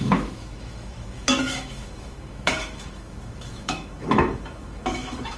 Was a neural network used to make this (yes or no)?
yes